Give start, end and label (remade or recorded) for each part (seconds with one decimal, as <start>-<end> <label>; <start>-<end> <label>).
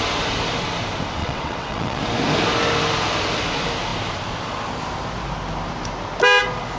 0.0-1.2 recorded; 1.2-2.0 remade; 2.0-6.8 recorded